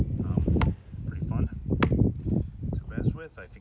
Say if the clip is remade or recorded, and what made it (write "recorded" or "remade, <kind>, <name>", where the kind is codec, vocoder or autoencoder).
recorded